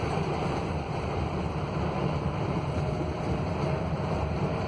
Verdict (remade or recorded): remade